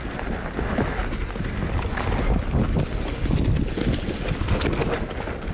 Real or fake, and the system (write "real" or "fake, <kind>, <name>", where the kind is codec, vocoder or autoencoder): real